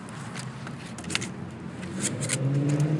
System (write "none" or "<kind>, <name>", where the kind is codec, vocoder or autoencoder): none